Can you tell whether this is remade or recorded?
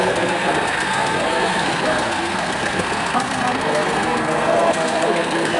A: remade